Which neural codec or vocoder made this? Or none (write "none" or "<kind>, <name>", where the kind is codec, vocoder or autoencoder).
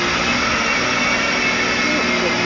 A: none